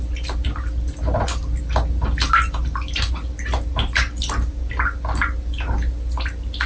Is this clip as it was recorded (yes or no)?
yes